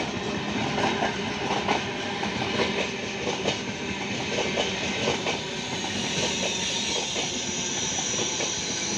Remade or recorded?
recorded